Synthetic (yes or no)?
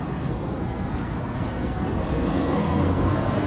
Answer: yes